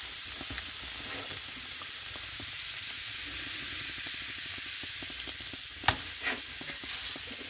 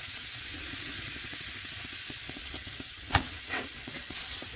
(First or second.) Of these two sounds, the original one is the first